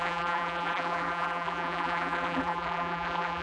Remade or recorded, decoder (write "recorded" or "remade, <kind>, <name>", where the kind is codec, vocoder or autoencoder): remade, vocoder, BigVGAN v2